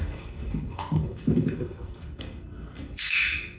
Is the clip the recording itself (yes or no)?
no